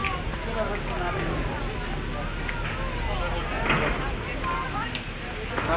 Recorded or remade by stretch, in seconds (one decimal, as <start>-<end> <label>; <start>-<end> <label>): 0.0-5.8 recorded